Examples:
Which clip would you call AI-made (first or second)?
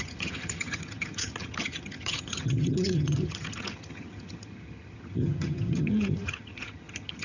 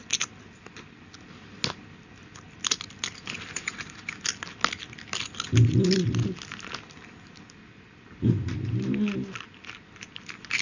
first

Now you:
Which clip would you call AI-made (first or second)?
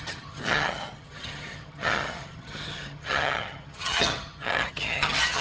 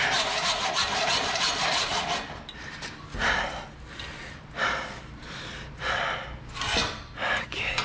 first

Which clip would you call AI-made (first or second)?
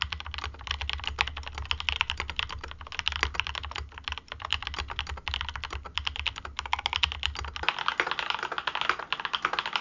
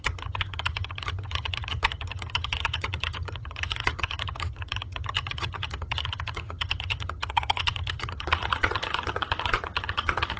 second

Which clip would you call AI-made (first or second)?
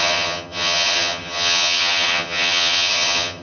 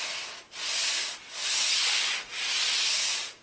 first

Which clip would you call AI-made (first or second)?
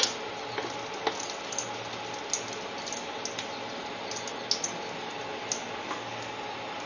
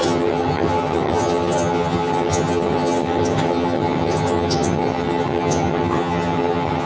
second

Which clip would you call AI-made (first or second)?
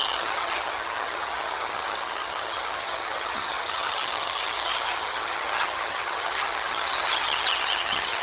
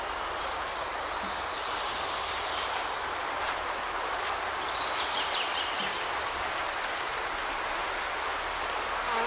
first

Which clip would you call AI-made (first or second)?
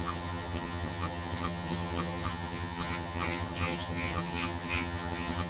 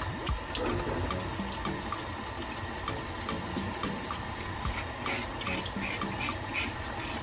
first